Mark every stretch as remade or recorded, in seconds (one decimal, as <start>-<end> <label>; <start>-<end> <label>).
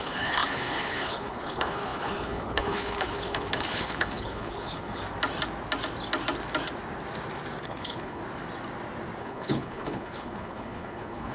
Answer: 0.0-5.0 remade; 5.0-7.6 recorded; 7.6-8.2 remade; 8.2-9.2 recorded; 9.2-11.3 remade